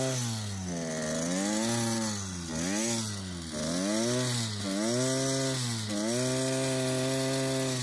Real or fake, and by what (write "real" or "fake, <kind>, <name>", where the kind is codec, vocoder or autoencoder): real